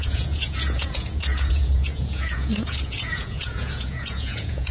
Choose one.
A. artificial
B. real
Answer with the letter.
A